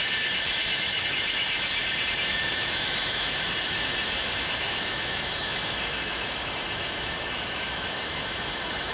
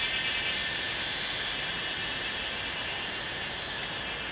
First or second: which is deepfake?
first